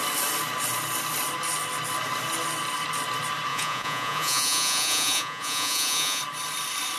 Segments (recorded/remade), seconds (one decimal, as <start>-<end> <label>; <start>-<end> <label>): 0.0-3.5 recorded; 3.5-6.2 remade; 6.2-7.0 recorded